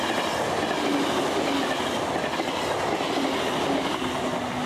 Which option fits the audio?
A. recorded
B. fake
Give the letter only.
A